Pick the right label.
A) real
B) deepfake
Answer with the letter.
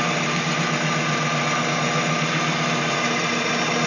A